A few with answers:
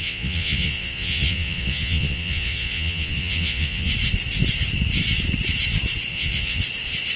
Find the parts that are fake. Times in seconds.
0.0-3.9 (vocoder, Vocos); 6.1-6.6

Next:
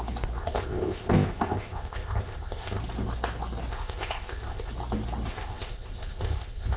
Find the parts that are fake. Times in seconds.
0.4-2.8 (codec, ZipCodec); 3.7-4.7; 5.3-6.8

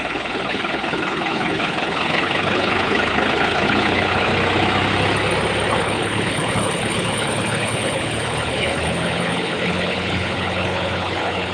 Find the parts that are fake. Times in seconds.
0.0-4.3 (codec, HILCodec); 5.7-11.5

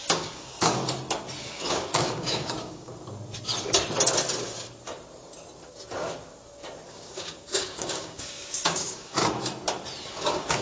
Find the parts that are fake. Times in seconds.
0.0-0.8 (codec, DAC); 1.4-2.9; 6.9-9.2; 10.1-10.6

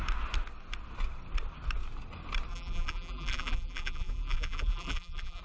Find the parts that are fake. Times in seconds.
2.5-5.4 (vocoder, BigVGAN v2)